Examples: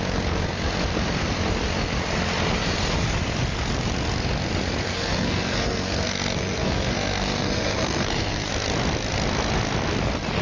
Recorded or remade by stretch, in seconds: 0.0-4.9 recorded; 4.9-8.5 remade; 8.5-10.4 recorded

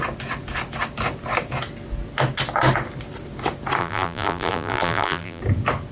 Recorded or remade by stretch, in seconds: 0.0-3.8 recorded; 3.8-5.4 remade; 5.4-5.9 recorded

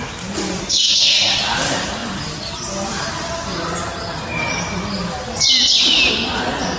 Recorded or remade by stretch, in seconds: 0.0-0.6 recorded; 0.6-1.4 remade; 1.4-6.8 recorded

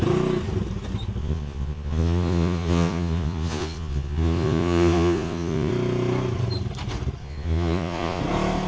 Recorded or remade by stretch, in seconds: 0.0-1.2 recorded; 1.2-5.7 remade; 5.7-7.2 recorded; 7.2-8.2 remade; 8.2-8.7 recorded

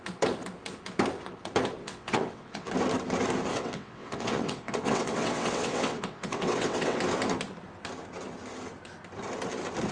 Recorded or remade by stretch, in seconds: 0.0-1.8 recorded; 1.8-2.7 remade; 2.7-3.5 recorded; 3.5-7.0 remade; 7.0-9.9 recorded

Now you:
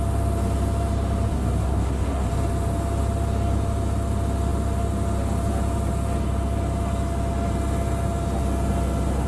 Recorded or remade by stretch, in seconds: 0.0-1.3 recorded; 1.3-2.3 remade; 2.3-9.3 recorded

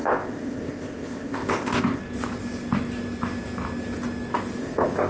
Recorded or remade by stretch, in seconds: 0.0-2.0 remade; 2.0-4.6 recorded; 4.6-5.1 remade

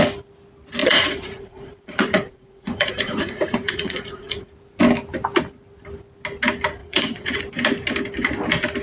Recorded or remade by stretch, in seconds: 0.0-0.8 recorded; 0.8-4.5 remade; 4.5-6.8 recorded; 6.8-7.4 remade; 7.4-8.8 recorded